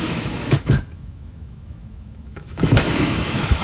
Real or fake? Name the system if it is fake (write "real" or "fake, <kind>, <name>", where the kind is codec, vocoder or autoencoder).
fake, autoencoder, DAC-VAE